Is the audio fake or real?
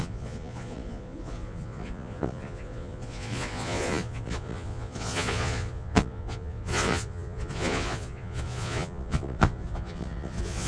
fake